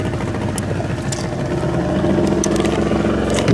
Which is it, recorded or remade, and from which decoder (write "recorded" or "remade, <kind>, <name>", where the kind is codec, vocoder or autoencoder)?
recorded